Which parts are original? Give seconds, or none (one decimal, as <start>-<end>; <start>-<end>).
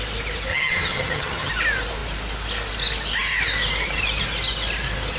0.0-0.5; 1.5-5.2